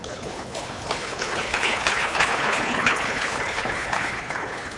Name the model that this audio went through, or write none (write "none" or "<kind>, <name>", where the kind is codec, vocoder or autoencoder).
codec, HILCodec